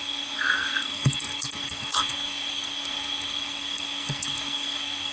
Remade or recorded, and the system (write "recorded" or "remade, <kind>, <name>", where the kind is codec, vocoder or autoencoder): remade, codec, SNAC